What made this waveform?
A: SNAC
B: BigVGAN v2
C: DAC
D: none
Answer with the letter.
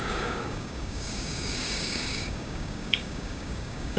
C